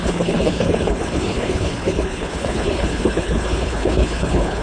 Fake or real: fake